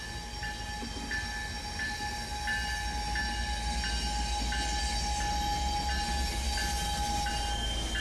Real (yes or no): yes